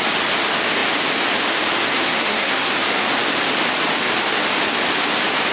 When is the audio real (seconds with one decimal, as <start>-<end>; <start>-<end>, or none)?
0.0-1.9; 2.7-5.5